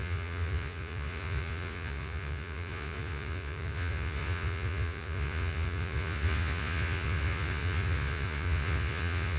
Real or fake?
fake